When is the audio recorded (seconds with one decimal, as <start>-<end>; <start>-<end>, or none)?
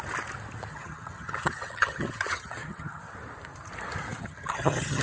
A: 0.0-0.7; 3.0-4.2